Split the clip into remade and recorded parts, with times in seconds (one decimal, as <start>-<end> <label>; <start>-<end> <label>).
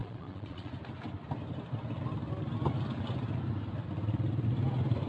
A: 0.0-0.7 remade; 0.7-5.1 recorded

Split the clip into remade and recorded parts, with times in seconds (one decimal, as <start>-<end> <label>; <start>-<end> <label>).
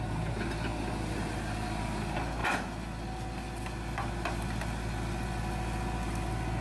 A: 0.0-6.6 recorded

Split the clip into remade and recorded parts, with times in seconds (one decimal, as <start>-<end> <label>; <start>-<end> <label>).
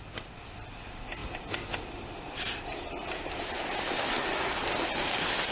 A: 0.0-1.2 recorded; 1.2-4.2 remade; 4.2-5.5 recorded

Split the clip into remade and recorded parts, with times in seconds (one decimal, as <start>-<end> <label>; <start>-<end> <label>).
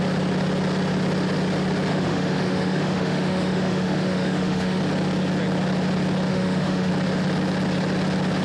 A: 0.0-1.9 recorded; 1.9-4.8 remade; 4.8-6.3 recorded; 6.3-6.9 remade; 6.9-8.4 recorded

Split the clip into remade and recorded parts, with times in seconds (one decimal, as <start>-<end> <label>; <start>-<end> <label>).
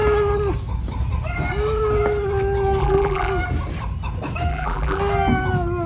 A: 0.0-2.8 recorded; 2.8-3.3 remade; 3.3-4.5 recorded; 4.5-5.0 remade; 5.0-5.9 recorded